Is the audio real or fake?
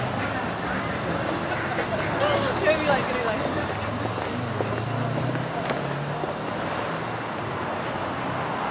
real